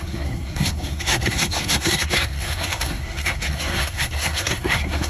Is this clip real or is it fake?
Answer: fake